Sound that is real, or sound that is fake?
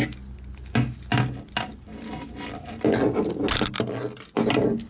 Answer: real